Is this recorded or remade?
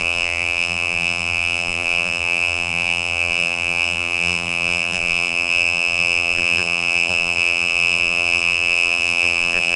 remade